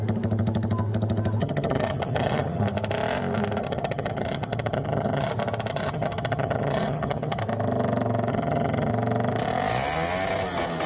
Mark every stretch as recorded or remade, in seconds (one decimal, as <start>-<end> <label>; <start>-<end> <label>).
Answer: 0.0-1.4 recorded; 1.4-2.6 remade; 2.6-3.6 recorded; 3.6-5.3 remade; 5.3-5.7 recorded; 5.7-7.4 remade; 7.4-8.3 recorded; 8.3-8.9 remade; 8.9-10.9 recorded